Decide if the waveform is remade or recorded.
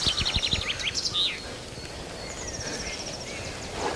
recorded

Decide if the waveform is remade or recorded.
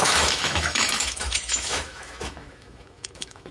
remade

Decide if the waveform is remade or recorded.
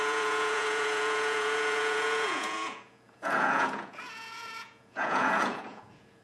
remade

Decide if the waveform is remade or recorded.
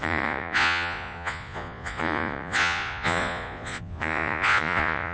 remade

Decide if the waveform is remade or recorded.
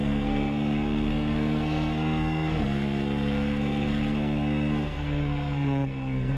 remade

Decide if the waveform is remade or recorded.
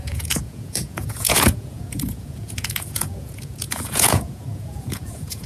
remade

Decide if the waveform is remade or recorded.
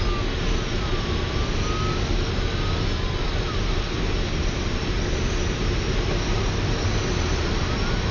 recorded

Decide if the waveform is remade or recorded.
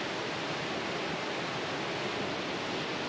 recorded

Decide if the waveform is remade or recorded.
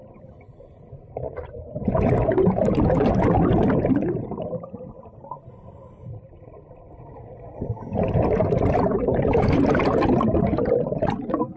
remade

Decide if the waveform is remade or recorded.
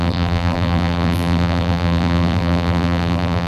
remade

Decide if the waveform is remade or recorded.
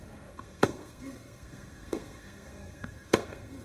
remade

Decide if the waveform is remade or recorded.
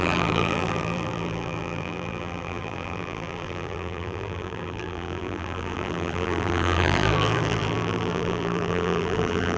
remade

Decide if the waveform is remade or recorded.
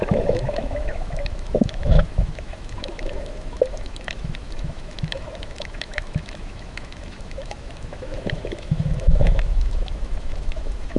remade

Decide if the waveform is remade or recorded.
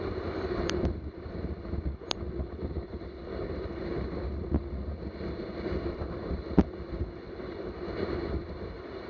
recorded